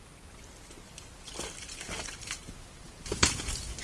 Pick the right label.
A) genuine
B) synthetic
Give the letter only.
A